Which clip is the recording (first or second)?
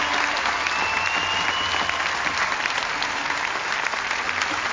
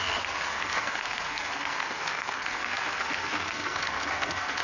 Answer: first